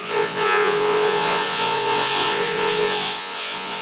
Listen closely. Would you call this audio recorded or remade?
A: remade